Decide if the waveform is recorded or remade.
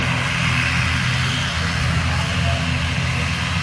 recorded